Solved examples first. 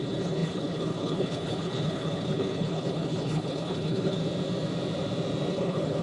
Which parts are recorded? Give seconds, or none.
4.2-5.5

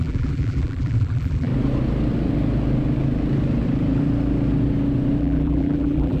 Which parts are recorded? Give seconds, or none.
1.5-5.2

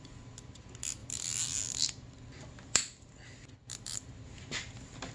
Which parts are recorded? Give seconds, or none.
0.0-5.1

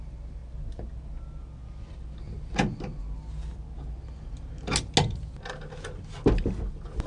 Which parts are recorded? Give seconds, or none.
0.0-7.1